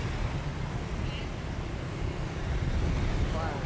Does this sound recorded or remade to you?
recorded